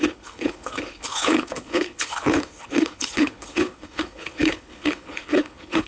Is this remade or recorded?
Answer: remade